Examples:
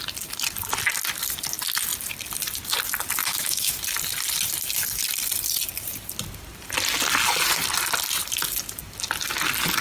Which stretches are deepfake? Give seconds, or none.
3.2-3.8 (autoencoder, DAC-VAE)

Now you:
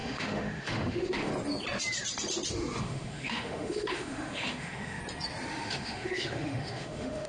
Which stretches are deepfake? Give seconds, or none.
0.0-1.3 (autoencoder, DAC-VAE); 2.8-5.0; 5.5-7.3

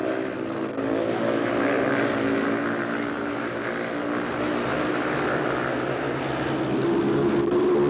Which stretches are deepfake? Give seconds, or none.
none

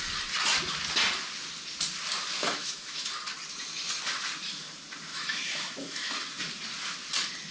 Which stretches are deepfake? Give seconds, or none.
2.4-3.1 (autoencoder, DAC-VAE); 5.1-6.1

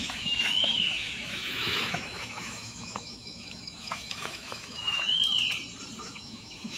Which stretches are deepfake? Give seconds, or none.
0.0-5.2 (autoencoder, DAC-VAE); 6.0-6.8

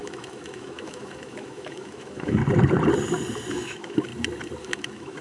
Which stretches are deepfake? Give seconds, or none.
0.0-2.4 (autoencoder, DAC-VAE); 3.5-4.1; 4.6-5.2

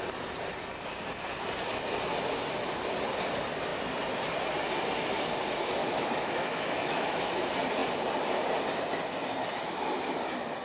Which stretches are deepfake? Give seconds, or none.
5.8-7.3 (autoencoder, DAC-VAE)

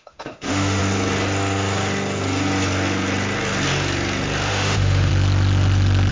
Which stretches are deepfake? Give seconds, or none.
0.0-0.8 (autoencoder, DAC-VAE); 4.5-5.1